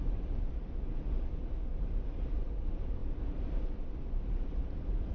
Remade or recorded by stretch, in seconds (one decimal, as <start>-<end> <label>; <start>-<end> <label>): 0.0-0.9 remade; 0.9-2.6 recorded; 2.6-5.1 remade